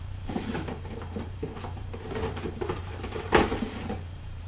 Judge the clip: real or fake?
fake